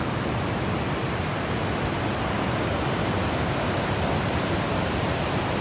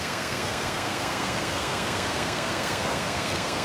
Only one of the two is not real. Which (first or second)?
second